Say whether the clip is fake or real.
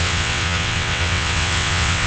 fake